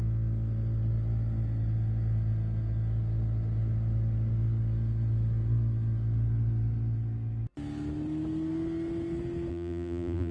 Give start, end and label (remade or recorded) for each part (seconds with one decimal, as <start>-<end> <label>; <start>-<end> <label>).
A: 0.0-9.5 recorded; 9.5-10.3 remade